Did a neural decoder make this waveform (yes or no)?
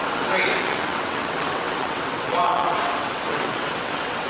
yes